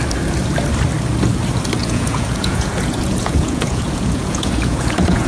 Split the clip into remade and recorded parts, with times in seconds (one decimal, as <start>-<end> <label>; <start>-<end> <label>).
0.0-1.8 recorded; 1.8-5.3 remade